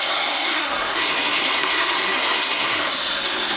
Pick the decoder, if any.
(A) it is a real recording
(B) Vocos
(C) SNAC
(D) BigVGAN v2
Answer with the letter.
C